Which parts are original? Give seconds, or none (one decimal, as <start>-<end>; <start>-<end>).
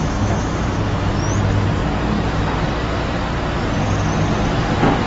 1.2-5.1